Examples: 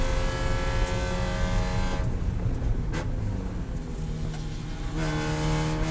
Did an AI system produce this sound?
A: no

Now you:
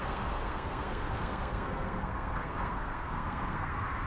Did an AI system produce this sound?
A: yes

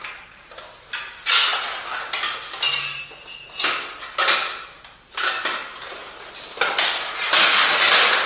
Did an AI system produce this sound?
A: no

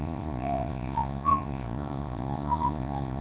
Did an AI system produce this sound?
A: yes